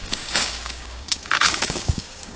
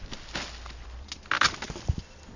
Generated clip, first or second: first